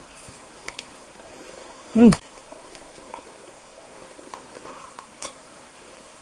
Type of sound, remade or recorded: remade